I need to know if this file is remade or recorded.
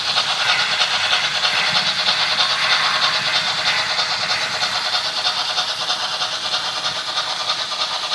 recorded